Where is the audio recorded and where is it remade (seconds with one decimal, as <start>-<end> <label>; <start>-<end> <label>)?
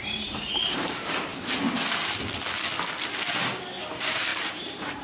0.0-1.3 remade; 1.3-3.8 recorded; 3.8-5.0 remade